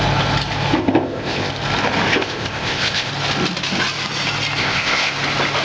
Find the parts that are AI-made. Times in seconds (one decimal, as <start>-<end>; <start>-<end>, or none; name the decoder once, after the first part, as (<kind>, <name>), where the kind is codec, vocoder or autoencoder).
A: 0.8-1.5 (codec, ZipCodec); 2.1-3.1; 4.6-5.1